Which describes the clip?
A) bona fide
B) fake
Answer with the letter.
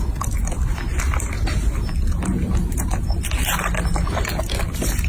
A